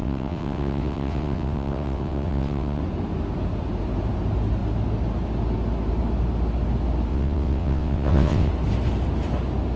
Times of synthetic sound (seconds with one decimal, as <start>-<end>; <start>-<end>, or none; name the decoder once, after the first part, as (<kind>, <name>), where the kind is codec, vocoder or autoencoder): 0.0-2.8 (vocoder, WaveNeXt); 7.1-8.5